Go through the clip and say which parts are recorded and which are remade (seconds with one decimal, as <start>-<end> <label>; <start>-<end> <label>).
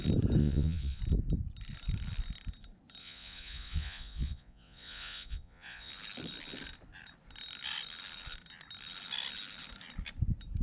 0.0-0.4 recorded; 0.4-1.0 remade; 1.0-3.0 recorded; 3.0-5.9 remade; 5.9-10.6 recorded